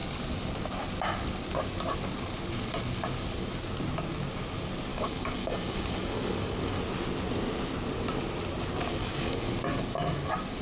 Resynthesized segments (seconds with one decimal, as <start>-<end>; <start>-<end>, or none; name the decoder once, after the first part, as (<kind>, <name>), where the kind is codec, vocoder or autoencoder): 4.9-6.8 (codec, DAC); 9.0-9.5